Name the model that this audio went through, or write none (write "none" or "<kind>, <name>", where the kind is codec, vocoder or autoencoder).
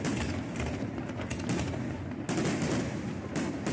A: none